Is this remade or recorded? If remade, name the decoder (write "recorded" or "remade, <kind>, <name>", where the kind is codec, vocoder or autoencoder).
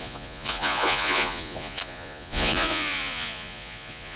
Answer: remade, vocoder, Vocos